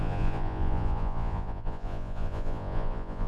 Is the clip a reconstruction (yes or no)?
yes